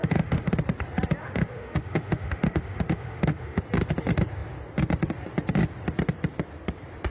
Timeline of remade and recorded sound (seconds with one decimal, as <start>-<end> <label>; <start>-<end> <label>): 0.0-0.5 remade; 0.5-1.2 recorded; 1.2-3.6 remade; 3.6-7.1 recorded